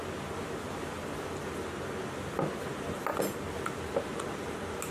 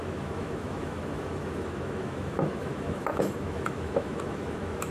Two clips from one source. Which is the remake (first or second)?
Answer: second